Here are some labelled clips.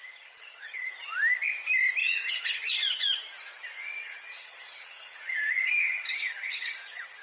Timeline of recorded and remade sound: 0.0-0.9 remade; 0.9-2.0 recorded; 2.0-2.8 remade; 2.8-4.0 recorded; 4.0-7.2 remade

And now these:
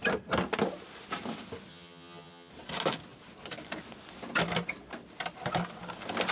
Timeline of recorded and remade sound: 0.0-1.7 recorded; 1.7-2.5 remade; 2.5-6.3 recorded

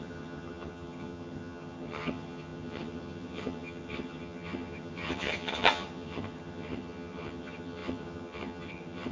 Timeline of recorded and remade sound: 0.0-9.1 remade

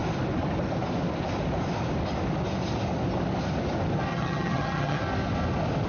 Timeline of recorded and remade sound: 0.0-4.1 recorded; 4.1-5.0 remade; 5.0-5.9 recorded

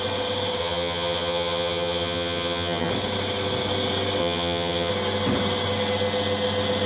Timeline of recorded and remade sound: 0.0-0.6 recorded; 0.6-2.9 remade; 2.9-4.2 recorded; 4.2-4.9 remade; 4.9-6.9 recorded

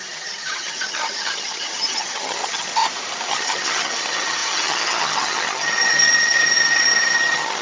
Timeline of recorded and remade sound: 0.0-2.7 remade; 2.7-3.3 recorded; 3.3-7.6 remade